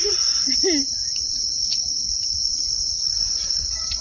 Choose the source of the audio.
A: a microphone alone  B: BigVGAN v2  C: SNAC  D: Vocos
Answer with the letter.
D